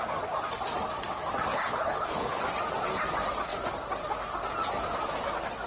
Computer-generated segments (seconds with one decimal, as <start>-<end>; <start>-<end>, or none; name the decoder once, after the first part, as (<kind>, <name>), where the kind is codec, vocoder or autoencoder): 1.5-2.4 (codec, HILCodec)